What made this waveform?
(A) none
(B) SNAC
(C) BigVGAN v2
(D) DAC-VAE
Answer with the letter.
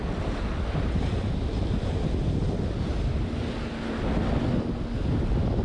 A